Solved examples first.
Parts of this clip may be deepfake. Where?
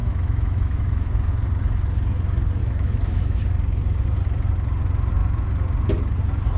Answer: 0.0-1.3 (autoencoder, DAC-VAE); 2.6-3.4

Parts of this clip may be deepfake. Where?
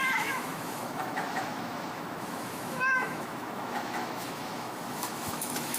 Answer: 0.0-5.8 (autoencoder, DAC-VAE)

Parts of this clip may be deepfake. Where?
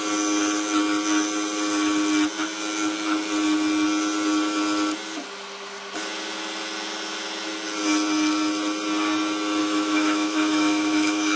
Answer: 9.6-11.4 (autoencoder, DAC-VAE)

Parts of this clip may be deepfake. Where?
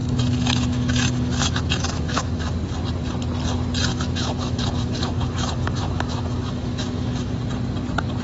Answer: 0.0-2.5 (autoencoder, DAC-VAE); 3.9-7.3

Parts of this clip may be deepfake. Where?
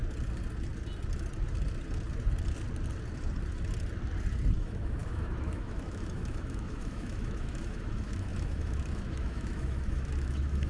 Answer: 4.6-10.7 (autoencoder, DAC-VAE)